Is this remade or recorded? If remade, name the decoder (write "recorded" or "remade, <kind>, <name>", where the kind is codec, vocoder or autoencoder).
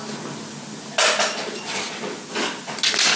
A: recorded